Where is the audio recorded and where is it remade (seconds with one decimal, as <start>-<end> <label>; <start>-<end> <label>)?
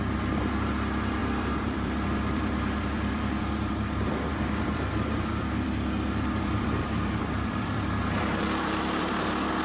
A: 0.0-1.2 recorded; 1.2-3.7 remade; 3.7-4.3 recorded; 4.3-9.6 remade